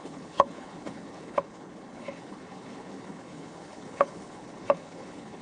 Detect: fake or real fake